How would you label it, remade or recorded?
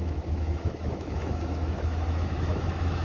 remade